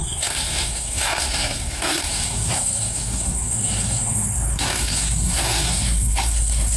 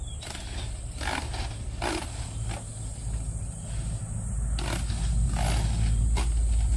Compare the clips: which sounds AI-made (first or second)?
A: first